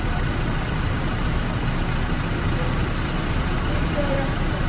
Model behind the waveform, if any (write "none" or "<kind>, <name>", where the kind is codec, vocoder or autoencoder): none